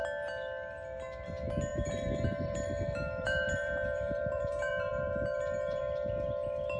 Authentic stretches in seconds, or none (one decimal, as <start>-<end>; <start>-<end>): 0.0-1.7; 5.8-6.8